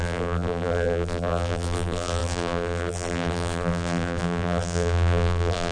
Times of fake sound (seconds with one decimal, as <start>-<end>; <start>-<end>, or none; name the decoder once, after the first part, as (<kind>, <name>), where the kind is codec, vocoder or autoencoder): 0.0-5.7 (vocoder, BigVGAN v2)